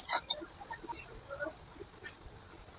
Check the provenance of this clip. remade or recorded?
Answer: recorded